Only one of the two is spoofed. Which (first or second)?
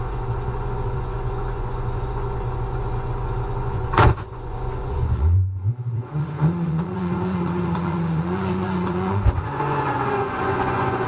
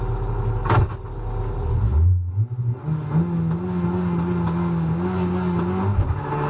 first